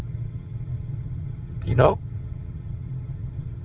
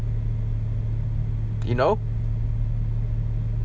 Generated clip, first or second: first